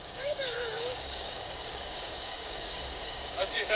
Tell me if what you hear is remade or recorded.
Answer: remade